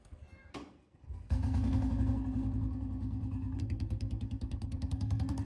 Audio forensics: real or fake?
fake